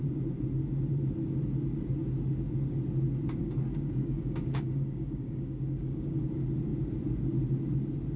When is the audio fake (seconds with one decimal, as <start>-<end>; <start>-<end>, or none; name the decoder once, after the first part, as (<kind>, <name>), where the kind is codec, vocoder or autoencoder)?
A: 3.4-6.2 (codec, DAC)